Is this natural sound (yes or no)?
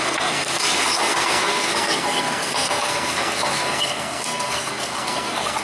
no